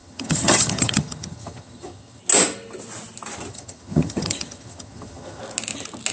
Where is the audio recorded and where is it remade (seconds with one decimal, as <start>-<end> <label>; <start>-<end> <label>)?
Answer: 0.0-2.2 remade; 2.2-3.5 recorded; 3.5-5.4 remade; 5.4-6.1 recorded